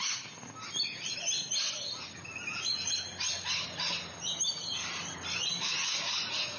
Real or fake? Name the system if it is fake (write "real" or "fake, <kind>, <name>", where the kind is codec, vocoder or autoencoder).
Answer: real